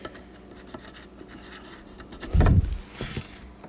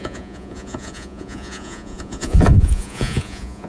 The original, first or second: first